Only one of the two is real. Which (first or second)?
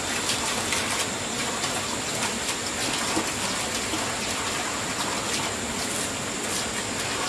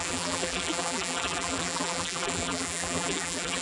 first